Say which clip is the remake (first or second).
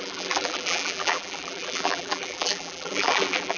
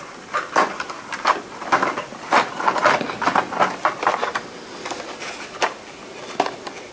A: first